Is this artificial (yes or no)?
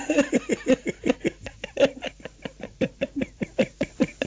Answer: yes